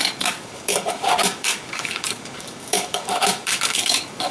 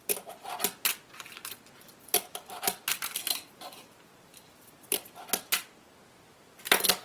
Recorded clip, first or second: second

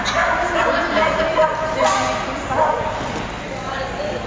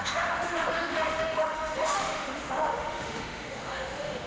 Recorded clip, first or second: first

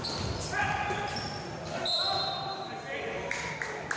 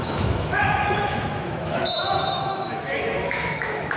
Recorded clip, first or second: first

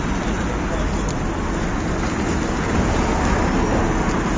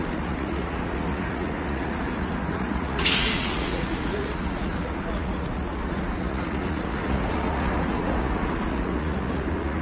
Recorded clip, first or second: first